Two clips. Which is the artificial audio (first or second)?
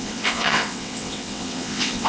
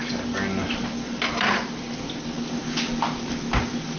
first